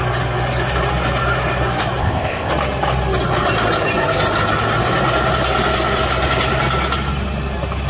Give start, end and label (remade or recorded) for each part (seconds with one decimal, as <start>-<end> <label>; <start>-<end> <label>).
0.0-2.0 recorded; 2.0-2.5 remade; 2.5-7.9 recorded